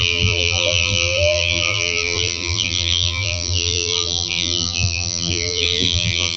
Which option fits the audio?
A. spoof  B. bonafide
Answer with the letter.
A